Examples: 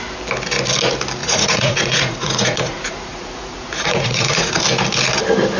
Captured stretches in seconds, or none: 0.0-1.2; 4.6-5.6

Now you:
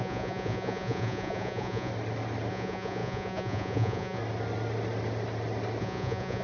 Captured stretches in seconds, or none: 1.9-2.5; 4.2-5.8

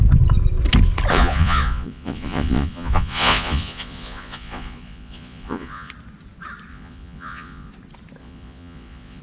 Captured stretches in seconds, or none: 0.0-1.1; 5.9-6.7; 7.7-8.2

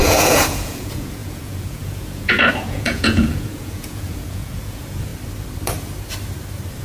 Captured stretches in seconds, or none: 5.1-6.8

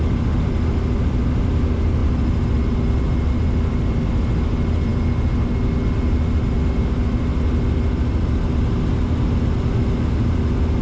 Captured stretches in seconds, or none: 0.0-10.8